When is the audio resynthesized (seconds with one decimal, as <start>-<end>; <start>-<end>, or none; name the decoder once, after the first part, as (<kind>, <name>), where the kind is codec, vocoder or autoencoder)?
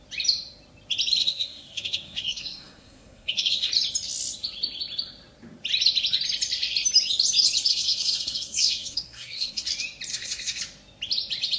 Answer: 1.2-3.7 (codec, SNAC); 7.7-9.7; 10.1-10.6